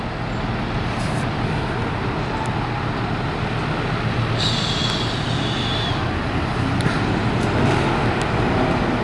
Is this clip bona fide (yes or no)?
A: yes